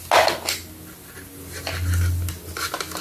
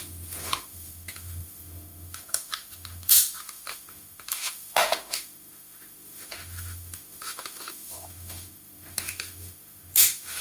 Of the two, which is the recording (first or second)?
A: first